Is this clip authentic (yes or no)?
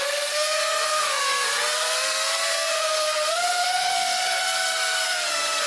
no